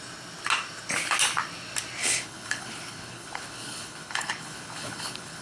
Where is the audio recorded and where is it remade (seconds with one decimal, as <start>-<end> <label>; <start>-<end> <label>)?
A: 0.0-2.0 recorded; 2.0-5.4 remade